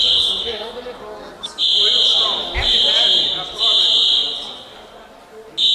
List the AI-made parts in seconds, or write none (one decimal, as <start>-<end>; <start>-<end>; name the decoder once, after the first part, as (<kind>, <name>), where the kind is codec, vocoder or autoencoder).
0.0-0.7 (codec, SNAC)